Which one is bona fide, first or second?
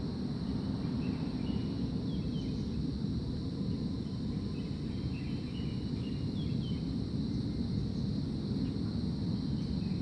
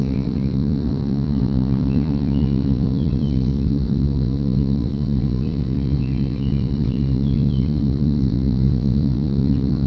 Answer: first